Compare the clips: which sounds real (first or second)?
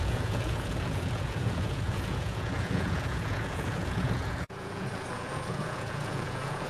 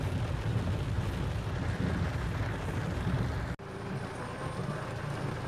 second